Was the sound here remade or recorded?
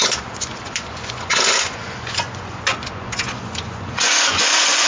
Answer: remade